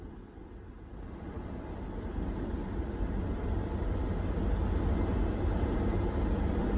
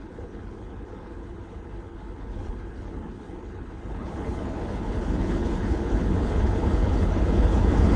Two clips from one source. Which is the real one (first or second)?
first